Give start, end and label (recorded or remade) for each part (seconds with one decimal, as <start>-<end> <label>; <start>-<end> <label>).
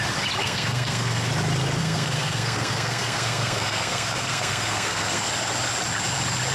0.0-0.4 recorded; 0.4-1.3 remade; 1.3-1.8 recorded; 1.8-5.3 remade; 5.3-6.5 recorded